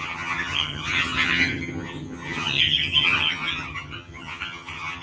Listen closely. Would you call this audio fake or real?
fake